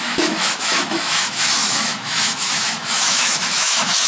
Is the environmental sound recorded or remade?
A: remade